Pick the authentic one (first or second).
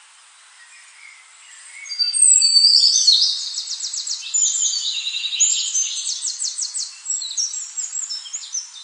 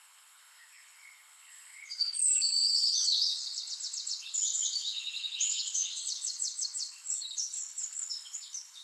first